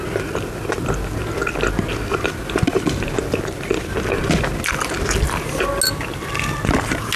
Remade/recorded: recorded